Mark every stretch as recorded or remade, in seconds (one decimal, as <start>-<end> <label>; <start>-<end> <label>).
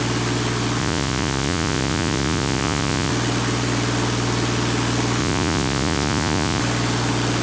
0.0-0.8 recorded; 0.8-3.1 remade; 3.1-5.2 recorded; 5.2-6.6 remade; 6.6-7.4 recorded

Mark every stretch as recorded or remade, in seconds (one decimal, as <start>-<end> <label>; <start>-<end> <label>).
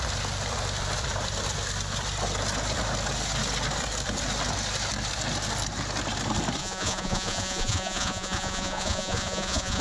0.0-6.6 recorded; 6.6-9.8 remade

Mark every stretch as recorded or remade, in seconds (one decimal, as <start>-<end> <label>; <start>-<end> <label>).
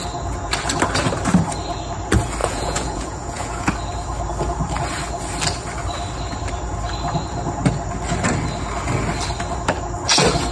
0.0-2.4 recorded; 2.4-3.7 remade; 3.7-10.5 recorded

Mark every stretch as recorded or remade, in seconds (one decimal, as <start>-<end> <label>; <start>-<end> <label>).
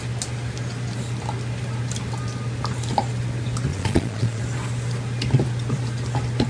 0.0-3.7 recorded; 3.7-4.4 remade; 4.4-6.5 recorded